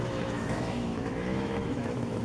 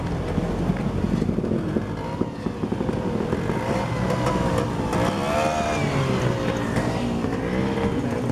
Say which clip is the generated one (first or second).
first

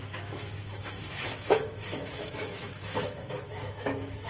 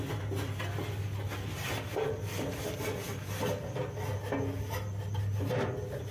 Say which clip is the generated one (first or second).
first